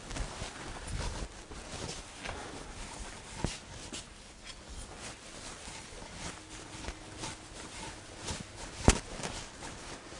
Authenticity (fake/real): real